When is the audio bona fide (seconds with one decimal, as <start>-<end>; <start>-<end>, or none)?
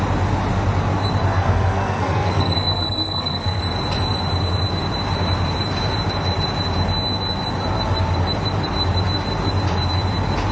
0.0-1.3; 3.6-10.5